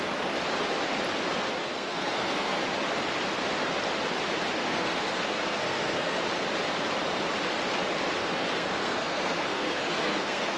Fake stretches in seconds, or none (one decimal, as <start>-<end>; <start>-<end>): 1.6-2.6; 4.6-6.2; 8.2-10.6